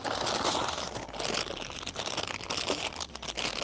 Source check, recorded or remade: recorded